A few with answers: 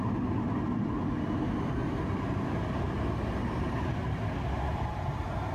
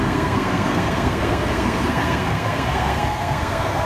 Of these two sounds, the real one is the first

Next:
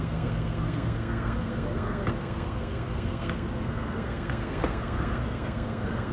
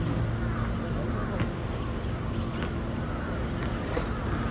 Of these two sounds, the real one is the second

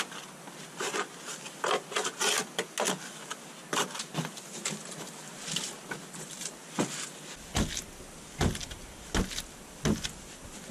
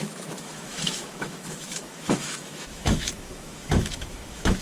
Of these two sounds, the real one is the first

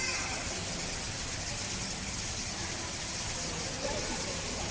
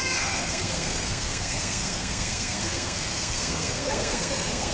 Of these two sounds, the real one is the first